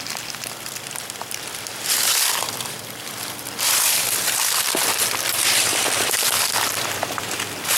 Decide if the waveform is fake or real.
fake